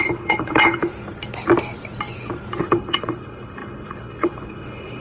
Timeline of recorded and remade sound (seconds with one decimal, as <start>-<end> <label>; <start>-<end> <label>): 0.0-0.8 remade; 0.8-2.6 recorded; 2.6-5.0 remade